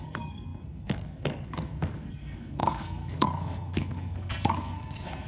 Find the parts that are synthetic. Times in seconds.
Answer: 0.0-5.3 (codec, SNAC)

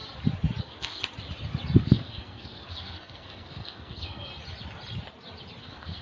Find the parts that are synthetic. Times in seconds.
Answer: 0.6-1.0 (codec, SNAC); 1.8-4.3; 5.6-6.0

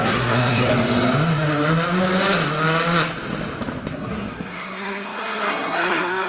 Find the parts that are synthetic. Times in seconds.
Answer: 0.0-0.7 (codec, SNAC); 3.9-6.3

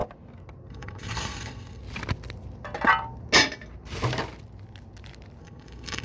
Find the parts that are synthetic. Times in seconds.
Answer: 0.7-1.8 (codec, SNAC); 5.4-6.0

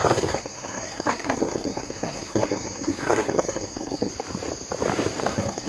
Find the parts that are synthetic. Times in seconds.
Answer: 0.0-4.1 (codec, SNAC); 5.2-5.7

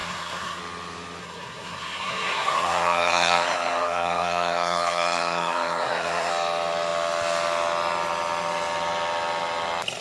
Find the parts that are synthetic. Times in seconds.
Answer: 0.0-0.6 (codec, SNAC); 1.2-6.3

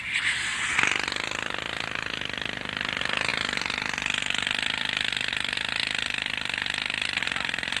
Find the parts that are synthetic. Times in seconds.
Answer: none